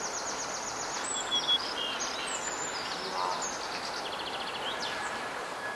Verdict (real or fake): real